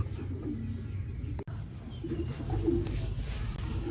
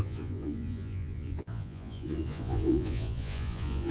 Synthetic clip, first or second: second